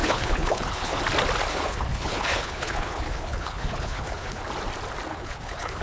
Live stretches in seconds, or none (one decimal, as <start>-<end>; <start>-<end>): 1.0-1.5; 4.4-5.1